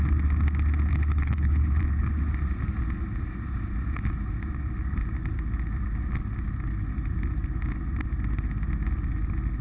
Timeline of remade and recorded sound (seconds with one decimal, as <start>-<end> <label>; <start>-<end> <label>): 0.0-0.9 recorded; 0.9-1.8 remade; 1.8-9.6 recorded